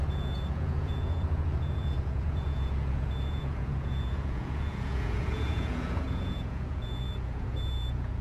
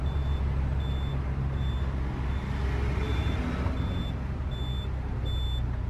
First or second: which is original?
second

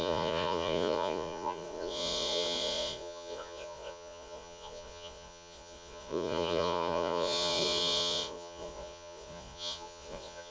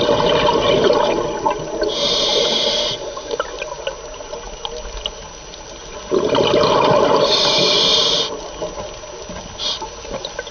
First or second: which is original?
second